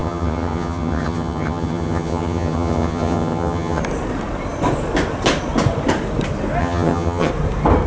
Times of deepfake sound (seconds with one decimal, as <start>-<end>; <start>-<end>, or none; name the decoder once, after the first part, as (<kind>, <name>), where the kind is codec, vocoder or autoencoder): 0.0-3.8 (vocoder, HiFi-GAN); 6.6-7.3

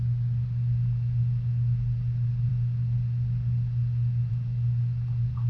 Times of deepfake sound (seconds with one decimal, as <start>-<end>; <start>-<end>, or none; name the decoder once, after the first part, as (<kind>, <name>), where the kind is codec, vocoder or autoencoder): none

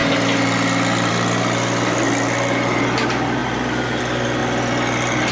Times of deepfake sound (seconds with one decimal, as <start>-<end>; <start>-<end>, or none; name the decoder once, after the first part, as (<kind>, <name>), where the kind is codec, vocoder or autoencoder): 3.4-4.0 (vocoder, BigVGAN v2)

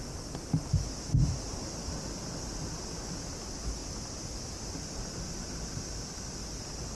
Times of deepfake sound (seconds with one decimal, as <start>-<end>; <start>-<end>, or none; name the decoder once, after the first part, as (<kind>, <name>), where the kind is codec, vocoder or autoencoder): none

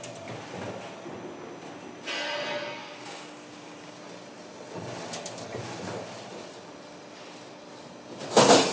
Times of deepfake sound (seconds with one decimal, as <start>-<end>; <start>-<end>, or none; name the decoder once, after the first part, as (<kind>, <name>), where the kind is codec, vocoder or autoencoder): 2.8-4.0 (codec, DAC)

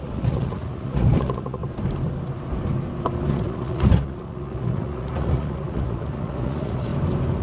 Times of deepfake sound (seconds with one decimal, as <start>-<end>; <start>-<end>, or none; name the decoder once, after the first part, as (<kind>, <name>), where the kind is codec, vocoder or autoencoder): 0.0-1.6 (vocoder, Vocos); 3.3-6.9